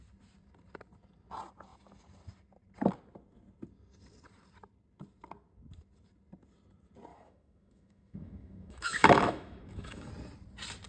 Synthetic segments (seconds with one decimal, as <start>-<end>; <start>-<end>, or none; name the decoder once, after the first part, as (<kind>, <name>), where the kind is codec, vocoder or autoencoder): 7.1-10.1 (autoencoder, DAC-VAE)